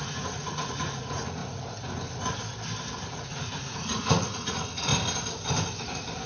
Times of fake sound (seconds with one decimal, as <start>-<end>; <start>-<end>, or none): 0.0-1.4; 3.1-4.9